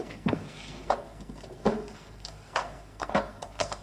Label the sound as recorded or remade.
remade